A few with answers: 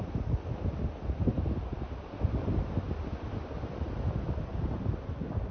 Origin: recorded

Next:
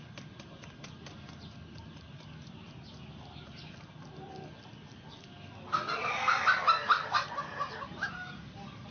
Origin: recorded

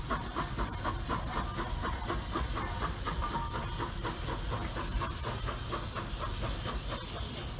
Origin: recorded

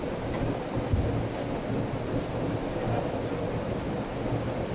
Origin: recorded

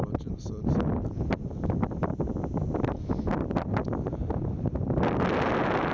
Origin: recorded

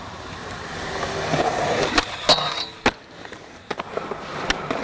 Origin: recorded